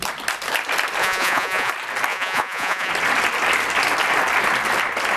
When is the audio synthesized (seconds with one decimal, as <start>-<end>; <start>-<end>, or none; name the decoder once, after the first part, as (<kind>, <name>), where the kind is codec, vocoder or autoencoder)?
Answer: 1.0-1.7 (vocoder, Vocos); 2.1-2.9